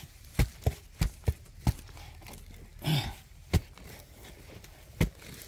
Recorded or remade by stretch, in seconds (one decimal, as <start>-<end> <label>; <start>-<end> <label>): 0.0-5.5 recorded